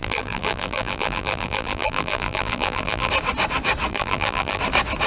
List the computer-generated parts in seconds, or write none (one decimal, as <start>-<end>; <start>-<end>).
0.0-3.1; 3.9-4.6